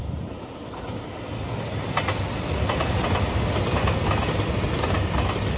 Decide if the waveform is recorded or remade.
recorded